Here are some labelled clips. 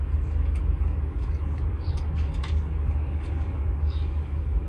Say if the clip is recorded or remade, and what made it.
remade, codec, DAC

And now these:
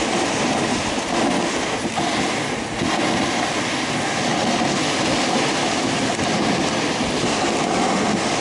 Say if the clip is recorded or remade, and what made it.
recorded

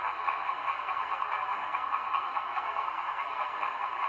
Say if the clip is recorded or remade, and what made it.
remade, codec, SNAC